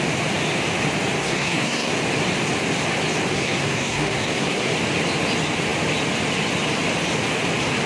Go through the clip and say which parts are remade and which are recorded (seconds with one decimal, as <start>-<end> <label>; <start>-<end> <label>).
0.0-1.2 recorded; 1.2-1.9 remade; 1.9-3.3 recorded; 3.3-4.7 remade; 4.7-7.9 recorded